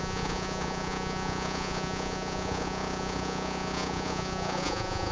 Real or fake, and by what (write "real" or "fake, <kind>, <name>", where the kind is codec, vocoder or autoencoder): fake, vocoder, Vocos